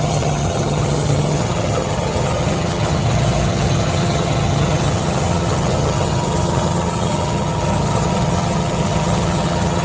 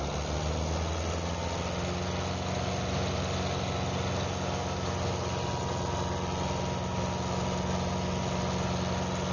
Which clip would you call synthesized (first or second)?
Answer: first